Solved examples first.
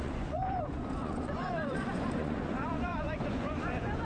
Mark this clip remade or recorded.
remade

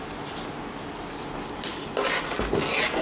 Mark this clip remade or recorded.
recorded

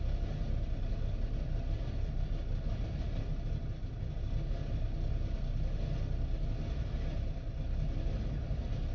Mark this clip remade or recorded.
recorded